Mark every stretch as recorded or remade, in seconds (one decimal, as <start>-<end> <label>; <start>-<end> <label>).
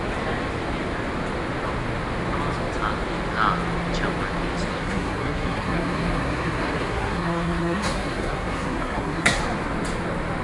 0.0-4.7 recorded; 4.7-9.4 remade; 9.4-10.4 recorded